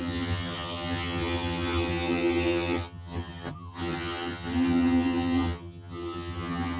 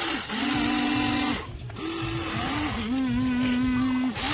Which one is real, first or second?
second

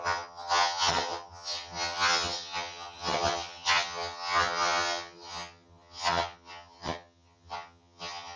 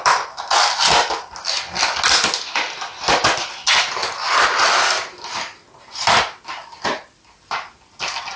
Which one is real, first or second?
second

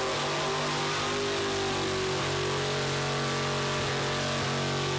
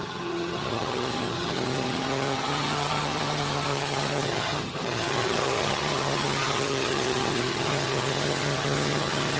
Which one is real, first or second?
first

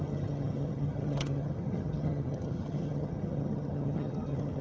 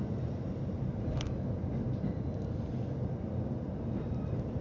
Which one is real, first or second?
second